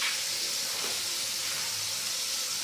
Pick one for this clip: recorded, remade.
recorded